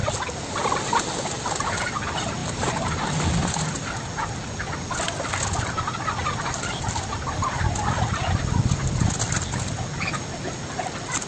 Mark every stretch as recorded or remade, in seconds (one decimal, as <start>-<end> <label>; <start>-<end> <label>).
0.0-2.4 recorded; 2.4-3.0 remade; 3.0-11.3 recorded